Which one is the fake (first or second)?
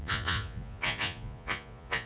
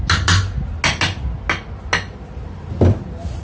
first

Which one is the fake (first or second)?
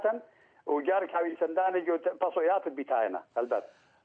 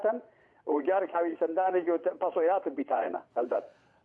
second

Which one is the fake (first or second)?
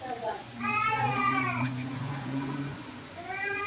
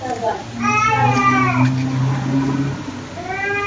first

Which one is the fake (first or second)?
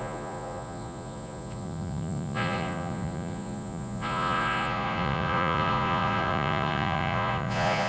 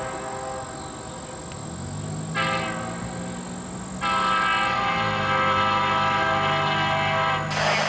first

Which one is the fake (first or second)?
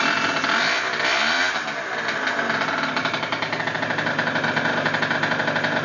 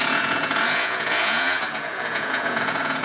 second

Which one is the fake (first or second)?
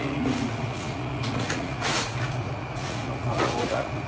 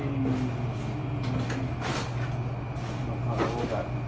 first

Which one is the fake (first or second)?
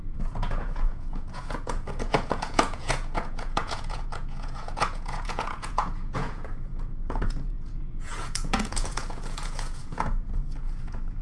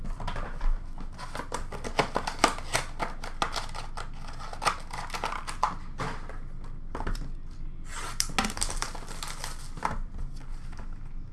first